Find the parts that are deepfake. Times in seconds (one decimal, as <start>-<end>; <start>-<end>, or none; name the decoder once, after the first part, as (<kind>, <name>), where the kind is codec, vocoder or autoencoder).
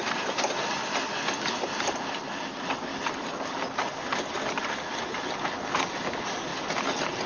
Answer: none